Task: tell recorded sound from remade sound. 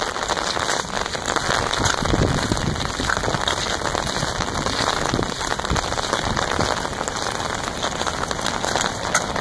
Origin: recorded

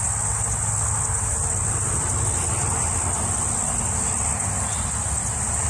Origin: recorded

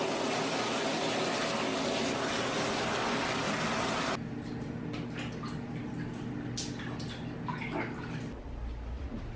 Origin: recorded